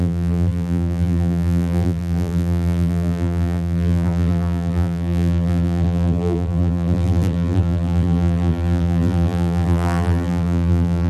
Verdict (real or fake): fake